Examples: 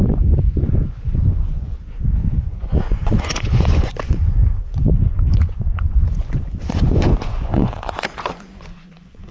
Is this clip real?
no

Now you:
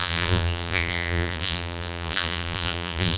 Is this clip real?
no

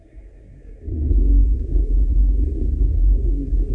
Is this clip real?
no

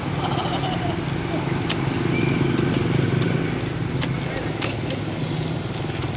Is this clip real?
yes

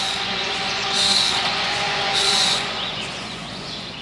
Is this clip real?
no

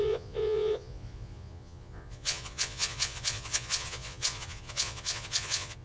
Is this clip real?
no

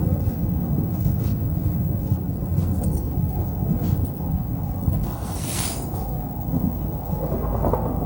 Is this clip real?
no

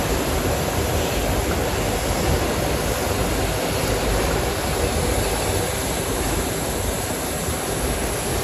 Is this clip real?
yes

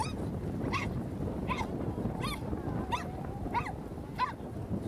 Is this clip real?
yes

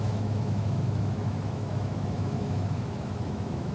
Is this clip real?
no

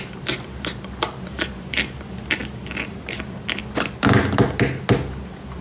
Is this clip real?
yes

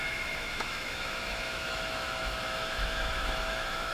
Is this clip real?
no